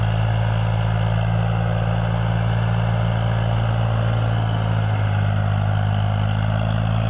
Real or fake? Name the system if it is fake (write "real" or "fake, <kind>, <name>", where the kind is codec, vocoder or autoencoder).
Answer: real